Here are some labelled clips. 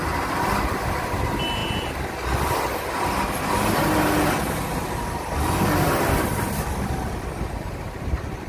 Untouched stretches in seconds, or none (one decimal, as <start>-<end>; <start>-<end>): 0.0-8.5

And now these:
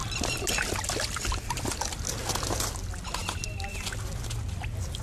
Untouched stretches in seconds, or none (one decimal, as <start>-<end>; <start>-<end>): 0.0-5.0

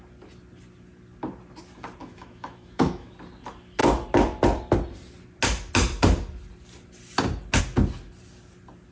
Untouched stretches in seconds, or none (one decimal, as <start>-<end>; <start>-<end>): 0.0-2.0; 3.1-8.9

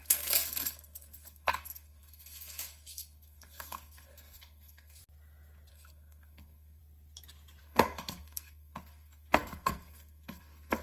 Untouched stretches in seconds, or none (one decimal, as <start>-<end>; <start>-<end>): 5.0-5.7; 6.8-7.6

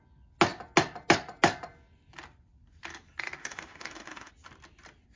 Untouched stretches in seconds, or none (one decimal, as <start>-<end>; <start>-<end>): 0.0-3.4; 4.3-5.2

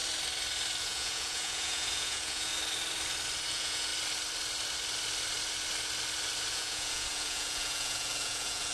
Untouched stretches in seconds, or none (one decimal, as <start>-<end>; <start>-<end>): 0.0-0.8; 2.5-3.5; 3.9-6.5